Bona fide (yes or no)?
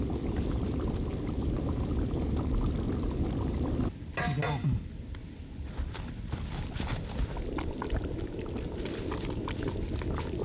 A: yes